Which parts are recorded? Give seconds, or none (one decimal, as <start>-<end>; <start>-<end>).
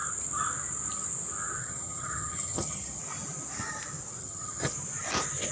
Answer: 0.0-1.6; 3.0-4.2; 4.7-5.5